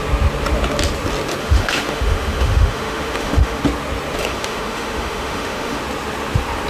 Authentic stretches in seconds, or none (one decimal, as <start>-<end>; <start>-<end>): 0.0-1.4; 3.6-4.2; 5.8-6.7